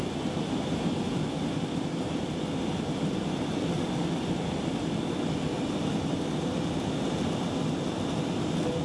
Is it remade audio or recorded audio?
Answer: recorded